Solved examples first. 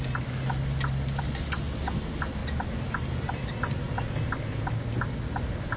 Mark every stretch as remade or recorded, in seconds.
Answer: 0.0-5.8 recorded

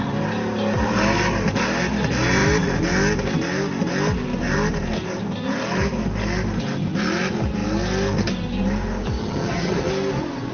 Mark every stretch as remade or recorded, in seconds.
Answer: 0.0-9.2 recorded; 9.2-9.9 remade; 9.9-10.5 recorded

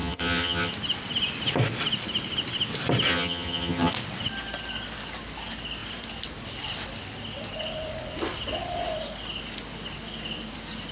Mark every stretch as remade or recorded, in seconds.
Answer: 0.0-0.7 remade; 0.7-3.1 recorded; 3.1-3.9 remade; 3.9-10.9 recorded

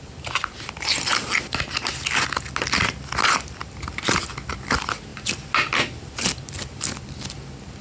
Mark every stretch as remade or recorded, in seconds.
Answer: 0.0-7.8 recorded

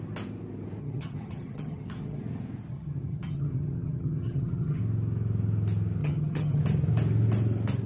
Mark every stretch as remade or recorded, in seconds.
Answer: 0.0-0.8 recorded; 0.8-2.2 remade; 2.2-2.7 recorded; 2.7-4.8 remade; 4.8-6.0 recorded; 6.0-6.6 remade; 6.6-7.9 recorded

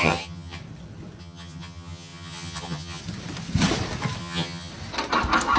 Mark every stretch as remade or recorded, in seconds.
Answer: 0.0-0.6 remade; 0.6-1.2 recorded; 1.2-3.0 remade; 3.0-4.2 recorded; 4.2-4.7 remade; 4.7-5.6 recorded

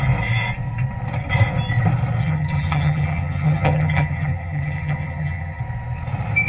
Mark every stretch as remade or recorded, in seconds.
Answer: 0.0-2.2 recorded; 2.2-5.6 remade; 5.6-6.5 recorded

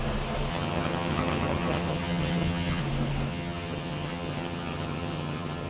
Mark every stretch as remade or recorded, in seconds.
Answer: 0.0-0.5 recorded; 0.5-2.8 remade; 2.8-3.3 recorded; 3.3-5.7 remade